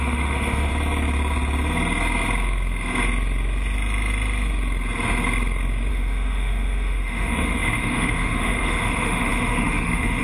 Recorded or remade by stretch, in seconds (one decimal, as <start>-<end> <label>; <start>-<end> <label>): 0.0-0.7 remade; 0.7-5.9 recorded; 5.9-10.2 remade